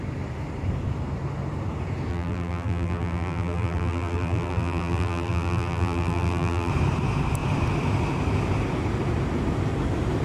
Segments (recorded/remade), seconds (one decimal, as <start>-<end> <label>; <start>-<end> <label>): 0.0-2.1 recorded; 2.1-6.7 remade; 6.7-10.2 recorded